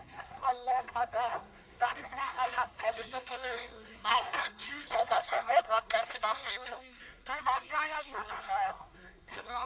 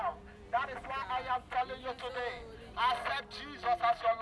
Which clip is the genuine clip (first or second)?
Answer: second